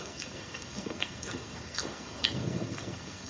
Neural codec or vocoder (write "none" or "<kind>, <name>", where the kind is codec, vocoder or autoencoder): codec, SNAC